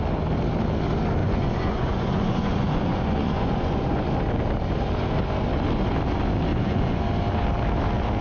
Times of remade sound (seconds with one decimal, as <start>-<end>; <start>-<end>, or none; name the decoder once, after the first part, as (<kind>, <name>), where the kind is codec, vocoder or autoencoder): 1.2-4.1 (vocoder, Vocos); 6.5-7.0